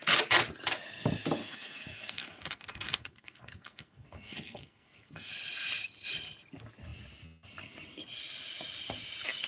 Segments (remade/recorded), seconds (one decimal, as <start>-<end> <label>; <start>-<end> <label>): 0.0-1.4 recorded; 1.4-5.3 remade; 5.3-9.5 recorded